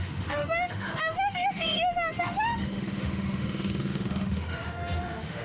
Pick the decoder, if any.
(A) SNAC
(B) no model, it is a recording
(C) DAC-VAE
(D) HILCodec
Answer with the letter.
C